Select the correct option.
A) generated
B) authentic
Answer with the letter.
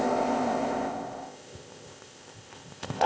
A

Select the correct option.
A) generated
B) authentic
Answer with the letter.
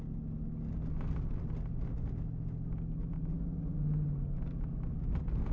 B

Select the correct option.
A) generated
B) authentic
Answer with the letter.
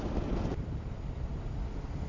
B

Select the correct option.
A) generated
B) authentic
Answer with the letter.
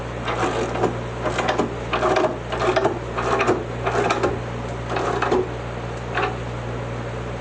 B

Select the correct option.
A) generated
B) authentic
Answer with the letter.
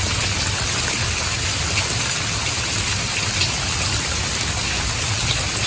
B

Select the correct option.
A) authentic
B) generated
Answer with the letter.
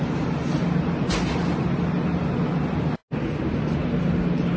A